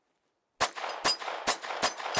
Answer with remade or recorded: recorded